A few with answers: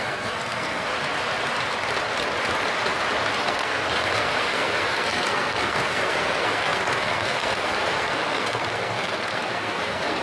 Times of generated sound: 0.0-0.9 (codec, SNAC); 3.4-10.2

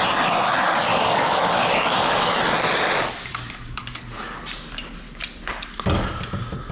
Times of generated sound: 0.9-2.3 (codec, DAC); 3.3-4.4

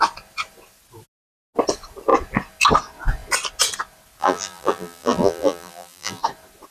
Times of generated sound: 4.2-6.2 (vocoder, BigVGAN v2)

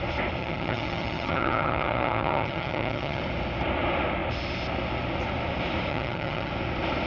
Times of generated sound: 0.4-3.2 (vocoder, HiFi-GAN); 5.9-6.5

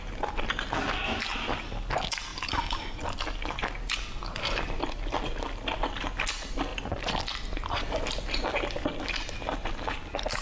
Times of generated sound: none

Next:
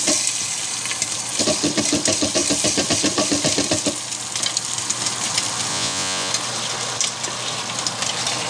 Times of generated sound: 5.7-6.3 (vocoder, Vocos)

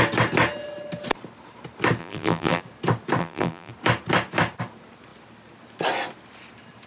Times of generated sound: 2.0-2.6 (vocoder, BigVGAN v2); 3.2-3.7

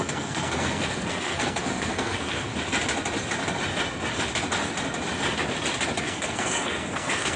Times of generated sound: 0.0-2.5 (codec, SNAC); 6.0-7.4